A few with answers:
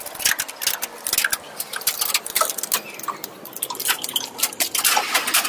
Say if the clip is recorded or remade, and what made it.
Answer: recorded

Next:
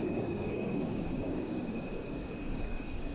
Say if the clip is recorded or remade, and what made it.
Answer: remade, codec, DAC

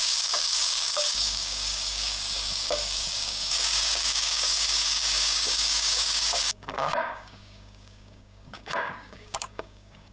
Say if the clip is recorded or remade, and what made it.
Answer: remade, codec, DAC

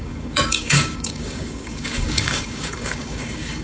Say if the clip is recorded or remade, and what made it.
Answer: remade, codec, DAC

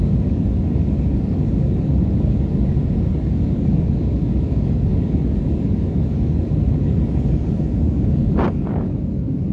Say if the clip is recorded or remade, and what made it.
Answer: remade, codec, DAC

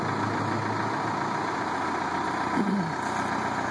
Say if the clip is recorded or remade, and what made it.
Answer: recorded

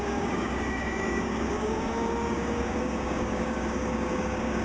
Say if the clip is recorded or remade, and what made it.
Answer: remade, codec, DAC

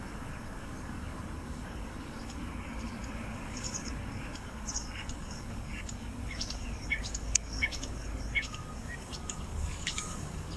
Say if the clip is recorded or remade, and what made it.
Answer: remade, codec, DAC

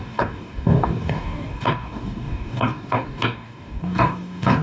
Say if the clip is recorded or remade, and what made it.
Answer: remade, codec, DAC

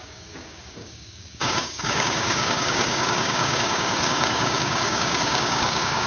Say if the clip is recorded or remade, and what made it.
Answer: remade, codec, DAC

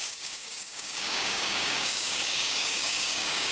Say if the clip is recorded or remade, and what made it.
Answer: remade, codec, DAC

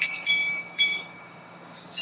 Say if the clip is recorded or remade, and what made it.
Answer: remade, codec, DAC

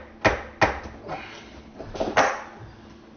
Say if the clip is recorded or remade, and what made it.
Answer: recorded